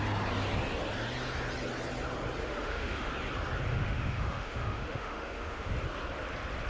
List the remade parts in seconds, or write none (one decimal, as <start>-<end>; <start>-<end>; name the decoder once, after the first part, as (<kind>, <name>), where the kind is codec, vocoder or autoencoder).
2.4-3.1 (autoencoder, DAC-VAE); 3.7-5.7